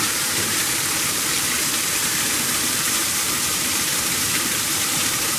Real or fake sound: fake